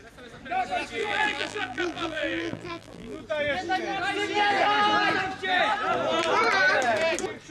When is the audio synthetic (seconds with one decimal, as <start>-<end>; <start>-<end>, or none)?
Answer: 1.0-3.2